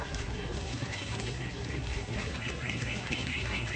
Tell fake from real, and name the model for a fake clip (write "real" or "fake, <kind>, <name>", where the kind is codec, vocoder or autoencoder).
fake, codec, SNAC